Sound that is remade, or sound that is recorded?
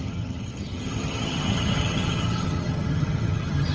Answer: remade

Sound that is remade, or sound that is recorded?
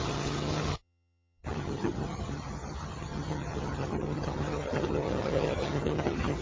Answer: remade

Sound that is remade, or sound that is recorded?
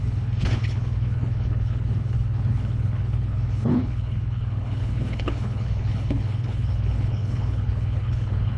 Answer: remade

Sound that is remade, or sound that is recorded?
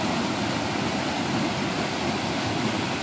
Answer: recorded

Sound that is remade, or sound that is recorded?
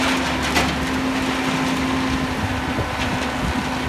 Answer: recorded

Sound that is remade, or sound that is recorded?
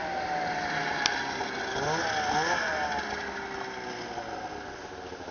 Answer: recorded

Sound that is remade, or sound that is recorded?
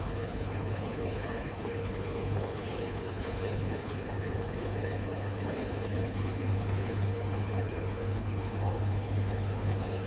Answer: remade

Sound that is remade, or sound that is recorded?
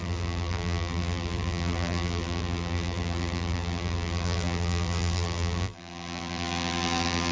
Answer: remade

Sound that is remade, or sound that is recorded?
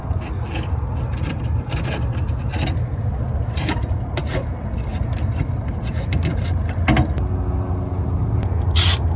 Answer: recorded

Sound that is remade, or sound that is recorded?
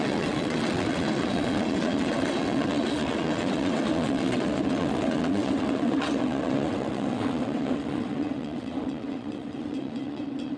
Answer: remade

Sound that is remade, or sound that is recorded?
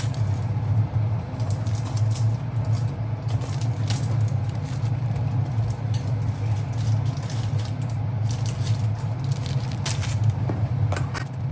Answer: recorded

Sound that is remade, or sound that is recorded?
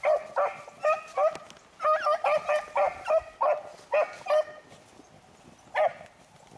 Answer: recorded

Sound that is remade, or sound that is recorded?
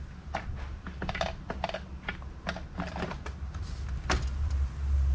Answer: recorded